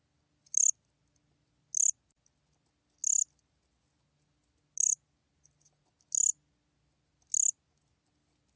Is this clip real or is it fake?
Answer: real